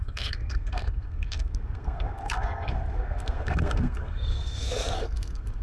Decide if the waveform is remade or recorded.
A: remade